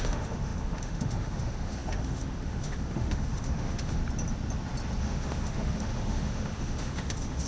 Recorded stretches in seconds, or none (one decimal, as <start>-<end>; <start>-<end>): 4.0-5.0